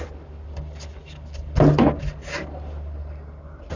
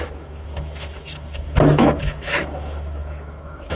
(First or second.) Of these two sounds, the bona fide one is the first